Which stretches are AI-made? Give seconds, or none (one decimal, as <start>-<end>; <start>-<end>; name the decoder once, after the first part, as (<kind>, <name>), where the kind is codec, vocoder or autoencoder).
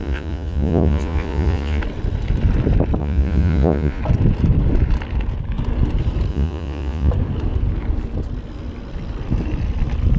0.0-1.8 (vocoder, Vocos); 3.0-4.0; 6.3-7.1